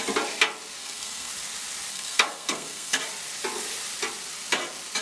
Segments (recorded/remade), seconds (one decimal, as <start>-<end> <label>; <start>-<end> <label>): 0.0-0.8 recorded; 0.8-1.3 remade; 1.3-1.9 recorded; 1.9-3.0 remade; 3.0-5.0 recorded